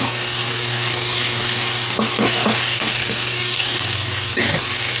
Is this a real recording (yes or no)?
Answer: no